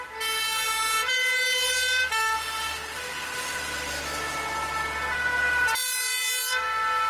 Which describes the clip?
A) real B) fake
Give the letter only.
A